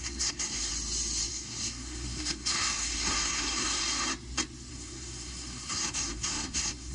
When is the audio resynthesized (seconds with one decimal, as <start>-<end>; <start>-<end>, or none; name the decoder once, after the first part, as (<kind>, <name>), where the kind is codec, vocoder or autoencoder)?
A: 0.0-0.7 (codec, SNAC); 1.3-3.8; 4.7-6.9